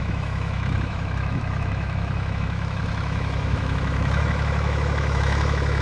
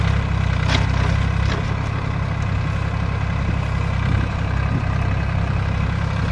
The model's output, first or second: first